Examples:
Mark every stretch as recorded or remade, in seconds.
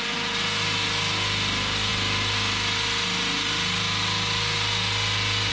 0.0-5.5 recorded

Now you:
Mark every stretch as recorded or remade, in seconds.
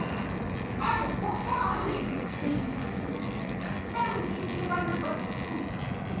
0.0-1.8 recorded; 1.8-3.9 remade; 3.9-6.2 recorded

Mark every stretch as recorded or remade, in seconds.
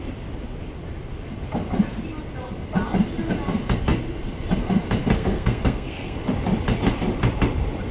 0.0-5.0 recorded; 5.0-6.2 remade; 6.2-7.9 recorded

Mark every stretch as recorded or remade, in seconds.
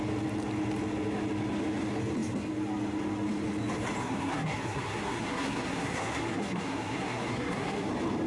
0.0-4.0 recorded; 4.0-7.9 remade; 7.9-8.3 recorded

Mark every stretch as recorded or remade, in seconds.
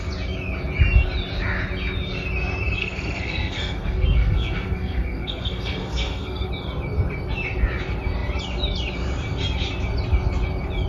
0.0-2.8 recorded; 2.8-6.5 remade; 6.5-10.9 recorded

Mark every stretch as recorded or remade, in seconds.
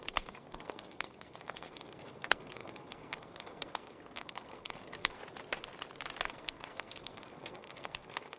0.0-5.2 remade; 5.2-6.3 recorded; 6.3-8.4 remade